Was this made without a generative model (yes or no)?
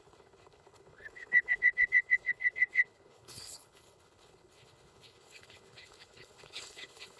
no